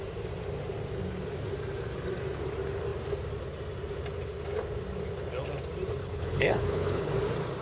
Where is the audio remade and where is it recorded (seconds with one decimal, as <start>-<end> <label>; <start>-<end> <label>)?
0.0-6.0 recorded; 6.0-7.1 remade; 7.1-7.6 recorded